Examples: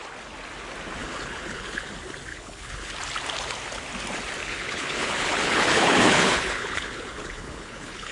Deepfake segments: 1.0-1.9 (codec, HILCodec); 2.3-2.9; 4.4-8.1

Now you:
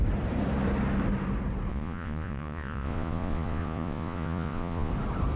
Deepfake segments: 1.7-4.9 (vocoder, Vocos)

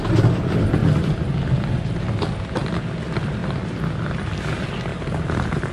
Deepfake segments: 0.8-1.9 (vocoder, BigVGAN v2); 3.4-4.3; 4.9-5.7

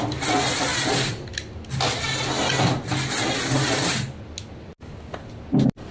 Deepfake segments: none

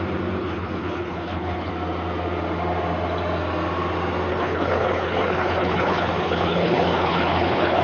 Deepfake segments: 0.4-1.7 (codec, HILCodec); 4.3-7.8

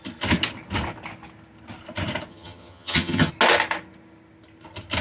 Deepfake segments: 2.3-3.3 (vocoder, HiFi-GAN)